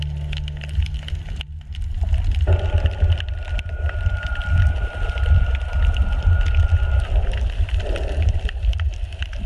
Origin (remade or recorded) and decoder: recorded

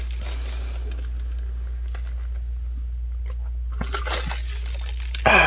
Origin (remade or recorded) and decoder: recorded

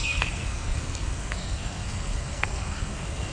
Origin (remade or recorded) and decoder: remade, codec, SNAC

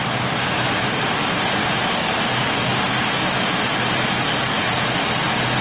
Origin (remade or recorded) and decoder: recorded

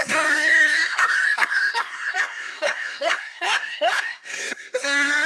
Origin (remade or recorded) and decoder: remade, codec, SNAC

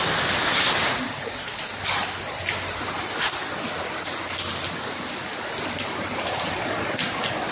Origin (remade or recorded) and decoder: recorded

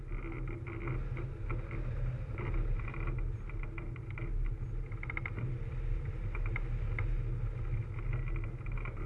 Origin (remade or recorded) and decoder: recorded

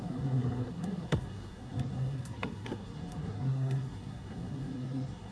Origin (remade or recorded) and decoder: remade, codec, SNAC